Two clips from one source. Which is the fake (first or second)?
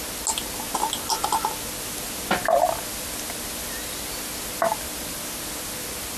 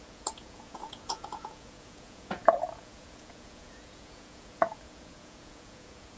second